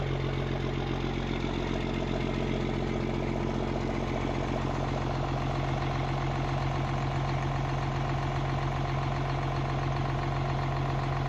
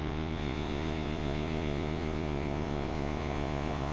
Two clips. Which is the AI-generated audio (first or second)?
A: second